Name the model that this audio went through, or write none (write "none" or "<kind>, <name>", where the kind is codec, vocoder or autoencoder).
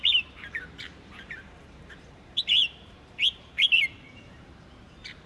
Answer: vocoder, BigVGAN v2